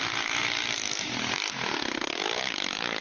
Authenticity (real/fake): fake